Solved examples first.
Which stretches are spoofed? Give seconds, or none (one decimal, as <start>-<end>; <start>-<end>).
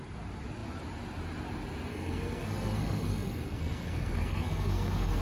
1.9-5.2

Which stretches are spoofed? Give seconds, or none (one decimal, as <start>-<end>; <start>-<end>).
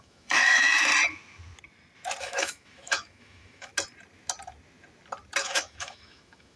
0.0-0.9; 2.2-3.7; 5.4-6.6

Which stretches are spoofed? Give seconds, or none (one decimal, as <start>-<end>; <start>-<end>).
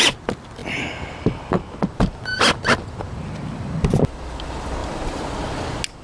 none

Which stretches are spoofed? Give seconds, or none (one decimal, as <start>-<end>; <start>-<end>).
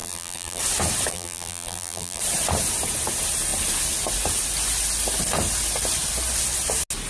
0.0-0.6; 1.1-2.2